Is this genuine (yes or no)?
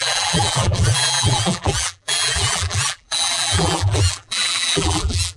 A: no